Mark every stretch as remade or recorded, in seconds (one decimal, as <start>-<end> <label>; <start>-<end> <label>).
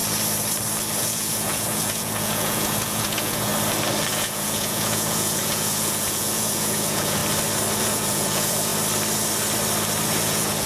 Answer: 0.0-1.0 recorded; 1.0-3.5 remade; 3.5-4.1 recorded; 4.1-7.2 remade; 7.2-7.8 recorded; 7.8-8.7 remade; 8.7-10.2 recorded; 10.2-10.7 remade